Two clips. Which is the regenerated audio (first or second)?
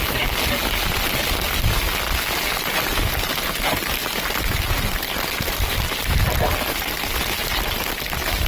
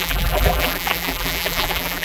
second